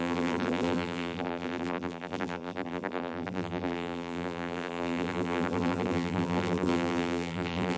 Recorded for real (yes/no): no